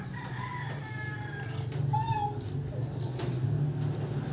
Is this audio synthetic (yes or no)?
no